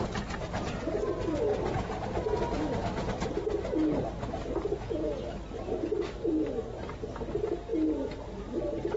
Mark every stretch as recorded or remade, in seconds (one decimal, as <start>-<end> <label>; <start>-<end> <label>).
0.0-3.4 recorded; 3.4-4.1 remade; 4.1-6.3 recorded; 6.3-7.3 remade; 7.3-9.0 recorded